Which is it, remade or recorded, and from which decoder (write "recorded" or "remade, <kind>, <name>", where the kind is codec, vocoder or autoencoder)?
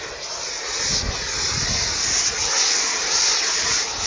recorded